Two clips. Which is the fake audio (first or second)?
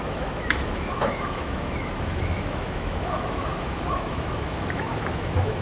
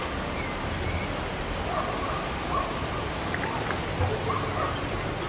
first